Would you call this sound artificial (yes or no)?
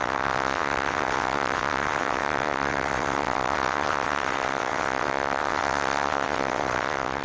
yes